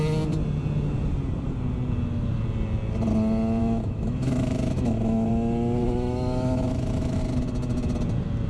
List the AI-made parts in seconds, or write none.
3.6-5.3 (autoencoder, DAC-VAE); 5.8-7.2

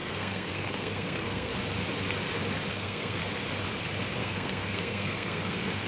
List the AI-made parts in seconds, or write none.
0.0-1.5 (codec, SNAC); 2.7-3.2; 4.2-5.9